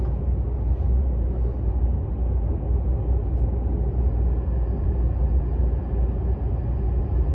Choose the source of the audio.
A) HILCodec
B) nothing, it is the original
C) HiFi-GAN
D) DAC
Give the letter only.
B